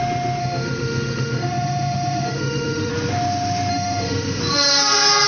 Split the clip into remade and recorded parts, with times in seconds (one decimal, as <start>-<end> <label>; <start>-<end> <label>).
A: 0.0-0.4 recorded; 0.4-2.9 remade; 2.9-3.7 recorded; 3.7-4.4 remade; 4.4-5.3 recorded